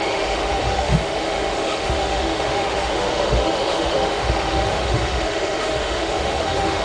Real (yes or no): no